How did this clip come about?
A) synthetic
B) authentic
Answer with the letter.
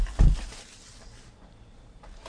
B